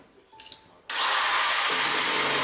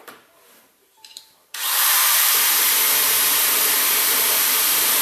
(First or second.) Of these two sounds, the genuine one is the first